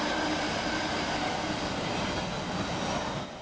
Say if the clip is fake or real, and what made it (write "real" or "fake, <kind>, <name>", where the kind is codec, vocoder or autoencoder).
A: real